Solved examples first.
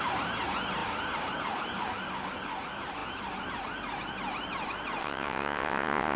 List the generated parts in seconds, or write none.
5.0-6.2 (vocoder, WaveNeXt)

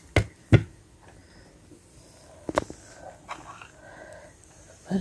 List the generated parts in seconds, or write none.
none

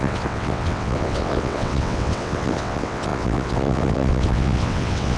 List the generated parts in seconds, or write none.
0.0-5.2 (vocoder, WaveNeXt)